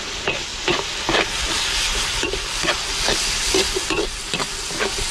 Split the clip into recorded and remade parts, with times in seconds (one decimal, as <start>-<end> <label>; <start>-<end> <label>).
0.0-5.1 recorded